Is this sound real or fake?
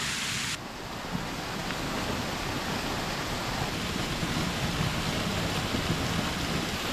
real